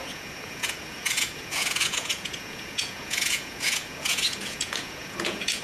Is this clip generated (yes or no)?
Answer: yes